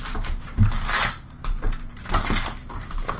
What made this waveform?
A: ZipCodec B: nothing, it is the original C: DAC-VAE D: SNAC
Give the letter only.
B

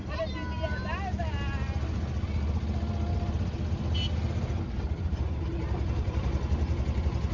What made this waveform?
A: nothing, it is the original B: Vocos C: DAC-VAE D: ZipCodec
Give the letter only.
A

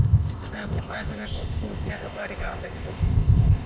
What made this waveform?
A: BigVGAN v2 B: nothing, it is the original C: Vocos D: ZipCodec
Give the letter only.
D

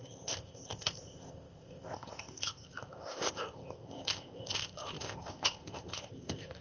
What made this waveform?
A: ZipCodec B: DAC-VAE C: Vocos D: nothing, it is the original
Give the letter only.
A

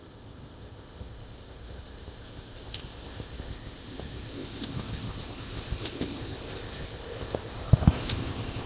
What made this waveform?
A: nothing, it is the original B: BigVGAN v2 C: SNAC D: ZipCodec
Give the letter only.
D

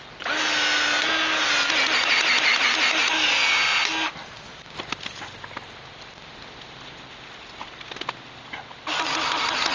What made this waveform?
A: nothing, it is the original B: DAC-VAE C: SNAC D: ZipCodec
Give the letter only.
A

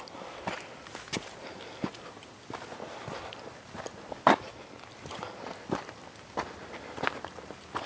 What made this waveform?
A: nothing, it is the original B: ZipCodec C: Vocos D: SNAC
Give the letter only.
A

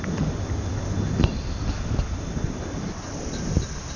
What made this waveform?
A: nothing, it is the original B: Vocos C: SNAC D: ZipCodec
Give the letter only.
A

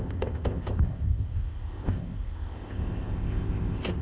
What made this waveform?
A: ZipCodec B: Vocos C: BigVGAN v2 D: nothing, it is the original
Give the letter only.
A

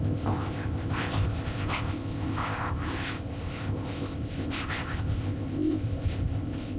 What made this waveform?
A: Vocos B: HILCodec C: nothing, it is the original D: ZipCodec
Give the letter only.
D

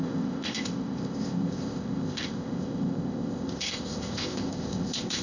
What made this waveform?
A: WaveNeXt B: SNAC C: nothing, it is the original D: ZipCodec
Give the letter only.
D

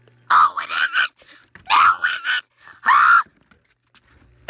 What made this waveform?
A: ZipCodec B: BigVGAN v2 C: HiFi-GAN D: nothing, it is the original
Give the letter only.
D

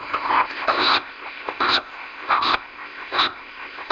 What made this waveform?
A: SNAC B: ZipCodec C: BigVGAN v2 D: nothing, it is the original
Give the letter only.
B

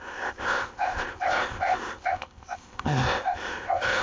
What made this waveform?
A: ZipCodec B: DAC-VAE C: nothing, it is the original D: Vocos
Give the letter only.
A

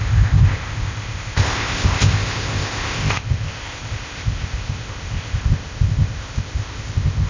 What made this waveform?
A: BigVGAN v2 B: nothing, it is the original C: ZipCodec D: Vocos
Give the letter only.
C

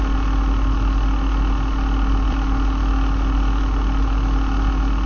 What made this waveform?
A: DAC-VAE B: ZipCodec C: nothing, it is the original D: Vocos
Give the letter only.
C